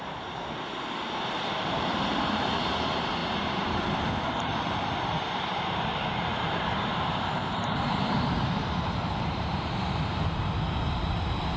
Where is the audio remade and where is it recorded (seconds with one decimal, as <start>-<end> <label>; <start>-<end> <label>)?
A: 0.0-11.6 remade